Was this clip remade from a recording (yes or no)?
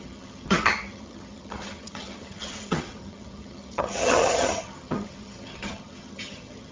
yes